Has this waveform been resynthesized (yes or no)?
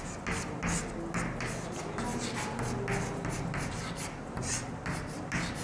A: no